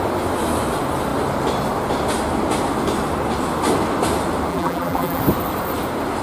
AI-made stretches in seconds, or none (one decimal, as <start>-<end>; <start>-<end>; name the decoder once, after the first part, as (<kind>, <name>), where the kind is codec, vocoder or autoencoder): 4.5-5.2 (vocoder, BigVGAN v2)